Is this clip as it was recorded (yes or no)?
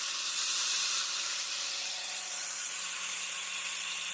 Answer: no